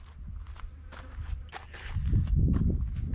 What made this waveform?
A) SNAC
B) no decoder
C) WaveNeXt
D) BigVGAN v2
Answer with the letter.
B